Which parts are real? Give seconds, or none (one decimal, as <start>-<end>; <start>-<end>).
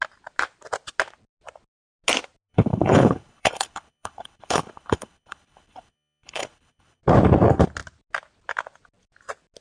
0.0-2.5; 7.0-9.6